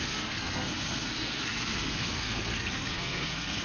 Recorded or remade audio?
remade